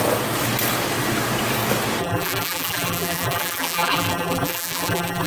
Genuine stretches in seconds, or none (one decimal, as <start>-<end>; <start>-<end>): 0.0-2.0

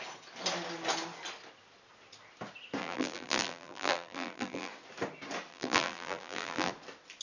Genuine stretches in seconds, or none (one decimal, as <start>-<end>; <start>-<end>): 0.0-2.8; 4.7-5.5; 6.7-7.2

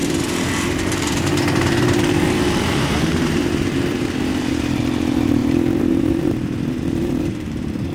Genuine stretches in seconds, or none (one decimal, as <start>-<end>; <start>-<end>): 4.7-5.4

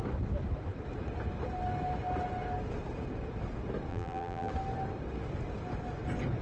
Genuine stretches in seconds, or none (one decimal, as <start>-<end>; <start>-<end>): 0.0-3.9; 4.5-6.4